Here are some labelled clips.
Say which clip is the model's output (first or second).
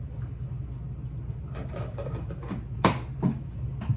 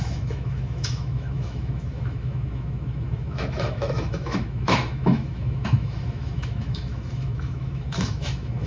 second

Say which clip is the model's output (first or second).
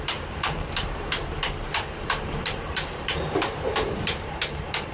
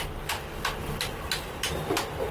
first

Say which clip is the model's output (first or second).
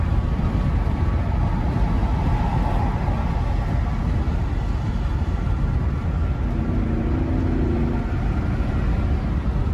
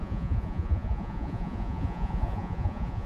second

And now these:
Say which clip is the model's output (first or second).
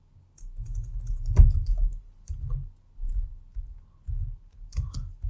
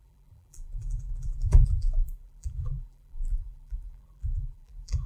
second